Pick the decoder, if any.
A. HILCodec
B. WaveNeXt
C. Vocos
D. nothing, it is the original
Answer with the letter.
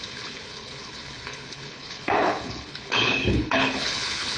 A